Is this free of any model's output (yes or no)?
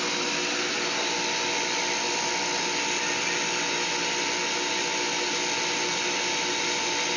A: yes